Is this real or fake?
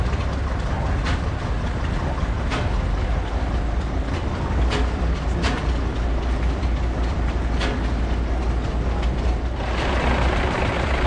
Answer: real